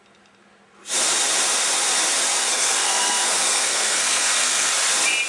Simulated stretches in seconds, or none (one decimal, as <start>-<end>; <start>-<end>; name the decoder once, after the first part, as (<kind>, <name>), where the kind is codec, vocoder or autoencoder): 2.4-4.7 (codec, SNAC)